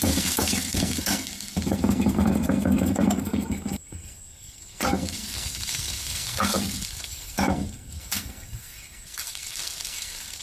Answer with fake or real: fake